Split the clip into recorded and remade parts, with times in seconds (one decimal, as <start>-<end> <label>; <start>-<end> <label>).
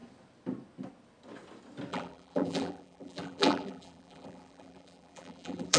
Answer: 0.0-1.9 recorded; 1.9-5.8 remade